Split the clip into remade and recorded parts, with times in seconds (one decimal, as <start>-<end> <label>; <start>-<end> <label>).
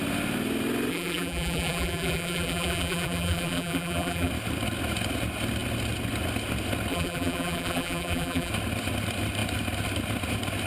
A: 0.0-0.9 recorded; 0.9-4.3 remade; 4.3-6.9 recorded; 6.9-8.5 remade; 8.5-10.7 recorded